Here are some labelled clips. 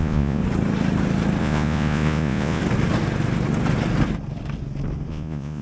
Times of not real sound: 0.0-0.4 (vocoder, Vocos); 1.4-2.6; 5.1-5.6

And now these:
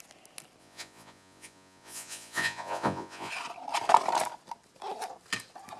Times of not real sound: 0.6-3.3 (vocoder, Vocos)

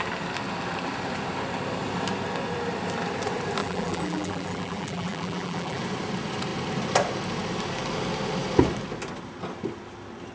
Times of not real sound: 3.6-5.8 (vocoder, BigVGAN v2)

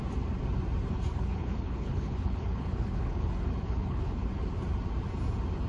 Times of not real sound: 1.1-4.3 (codec, HILCodec)

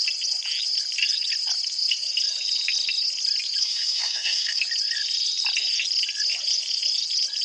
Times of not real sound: 3.6-4.6 (codec, SNAC)

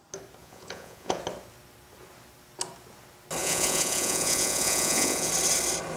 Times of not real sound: 0.4-1.2 (vocoder, Vocos); 3.4-5.3

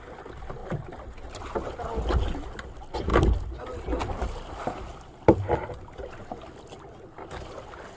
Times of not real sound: none